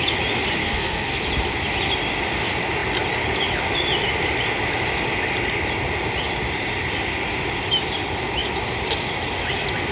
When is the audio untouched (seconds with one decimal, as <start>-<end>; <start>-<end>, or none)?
0.0-0.6; 1.2-9.9